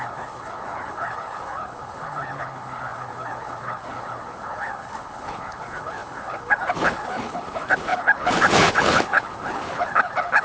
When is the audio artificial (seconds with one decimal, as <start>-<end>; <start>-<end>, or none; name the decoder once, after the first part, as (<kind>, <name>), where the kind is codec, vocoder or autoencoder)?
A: 0.0-10.4 (codec, HILCodec)